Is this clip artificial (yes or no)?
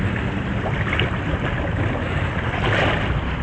no